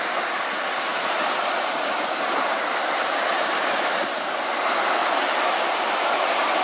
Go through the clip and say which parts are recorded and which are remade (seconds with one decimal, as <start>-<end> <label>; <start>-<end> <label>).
0.0-6.6 remade